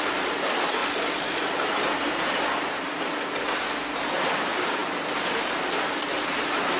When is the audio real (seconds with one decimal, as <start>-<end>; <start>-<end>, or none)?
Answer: 0.0-6.8